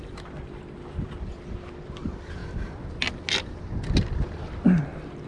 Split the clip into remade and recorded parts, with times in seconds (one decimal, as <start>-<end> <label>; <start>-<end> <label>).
0.0-2.4 remade; 2.4-4.8 recorded; 4.8-5.3 remade